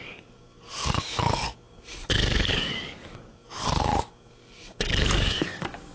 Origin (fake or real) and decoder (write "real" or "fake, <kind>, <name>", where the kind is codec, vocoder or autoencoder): fake, codec, DAC